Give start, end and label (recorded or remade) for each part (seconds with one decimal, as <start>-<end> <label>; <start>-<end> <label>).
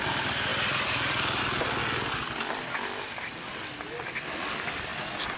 0.0-5.4 recorded